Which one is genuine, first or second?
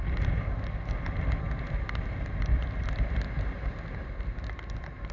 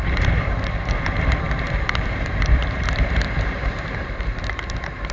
first